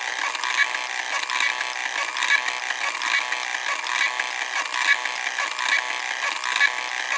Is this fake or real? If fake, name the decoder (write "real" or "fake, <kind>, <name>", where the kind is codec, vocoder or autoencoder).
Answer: real